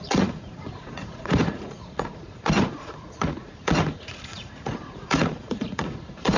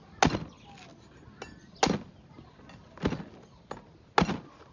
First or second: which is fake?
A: first